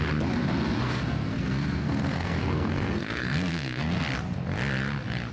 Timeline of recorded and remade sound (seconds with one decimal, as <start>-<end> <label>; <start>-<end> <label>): 0.0-0.8 recorded; 0.8-4.0 remade; 4.0-5.3 recorded